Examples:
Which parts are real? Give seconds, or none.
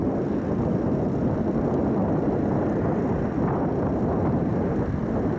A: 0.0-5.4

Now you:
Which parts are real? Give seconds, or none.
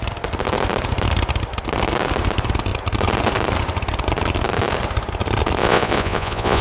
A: 0.0-5.6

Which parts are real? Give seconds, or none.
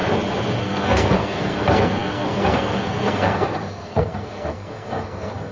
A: 0.0-0.6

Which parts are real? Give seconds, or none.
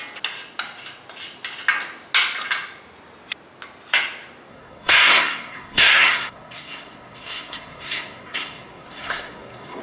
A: 0.0-4.5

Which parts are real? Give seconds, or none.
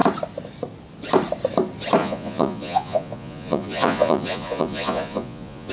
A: 0.0-2.0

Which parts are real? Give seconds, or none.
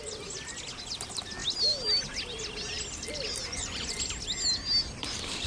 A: 0.0-3.5; 4.0-5.5